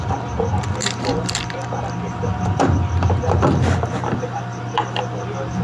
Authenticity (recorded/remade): remade